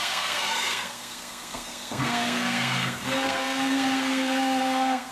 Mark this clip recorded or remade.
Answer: remade